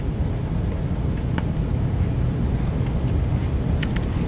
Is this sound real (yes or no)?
yes